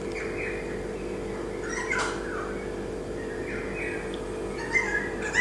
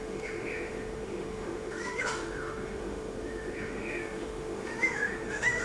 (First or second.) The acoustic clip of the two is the first